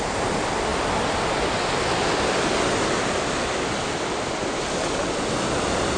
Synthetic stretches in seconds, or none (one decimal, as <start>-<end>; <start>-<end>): none